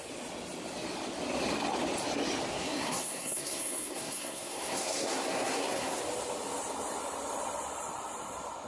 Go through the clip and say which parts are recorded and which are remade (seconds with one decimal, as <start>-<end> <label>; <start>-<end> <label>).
0.0-2.5 recorded; 2.5-6.0 remade; 6.0-8.7 recorded